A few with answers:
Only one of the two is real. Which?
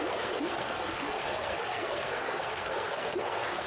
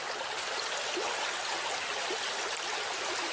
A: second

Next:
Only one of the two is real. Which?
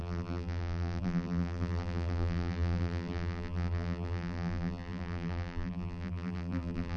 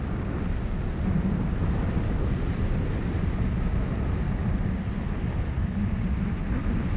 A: second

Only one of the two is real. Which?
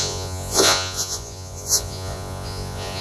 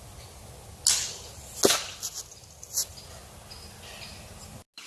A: second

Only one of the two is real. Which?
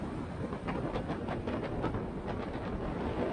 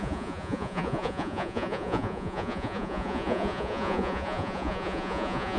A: first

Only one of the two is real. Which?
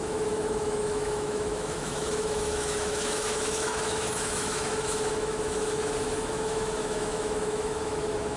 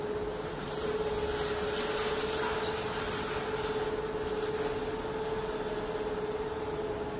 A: second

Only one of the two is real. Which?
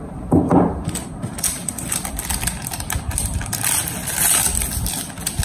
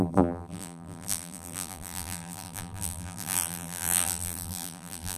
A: first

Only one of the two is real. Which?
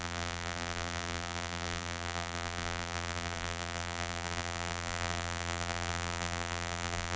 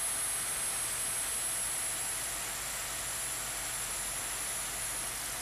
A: second